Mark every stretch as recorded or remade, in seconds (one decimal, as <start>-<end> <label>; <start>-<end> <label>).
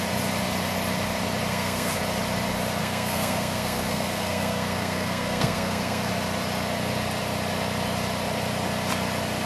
0.0-1.5 recorded; 1.5-2.0 remade; 2.0-2.8 recorded; 2.8-6.1 remade; 6.1-9.5 recorded